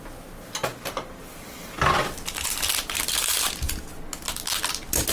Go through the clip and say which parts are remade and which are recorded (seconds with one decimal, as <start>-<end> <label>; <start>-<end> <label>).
0.0-5.1 recorded